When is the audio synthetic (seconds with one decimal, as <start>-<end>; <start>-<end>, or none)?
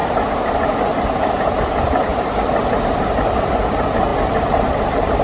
0.0-0.6; 2.1-3.5; 4.1-4.8